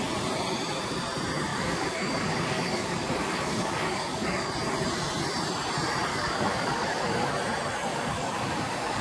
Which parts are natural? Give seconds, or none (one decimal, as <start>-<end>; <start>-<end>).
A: 0.0-1.5; 4.5-6.1; 7.3-7.9